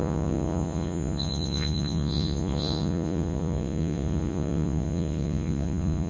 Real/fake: fake